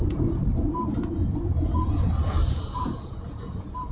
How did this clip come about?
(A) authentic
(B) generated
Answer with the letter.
B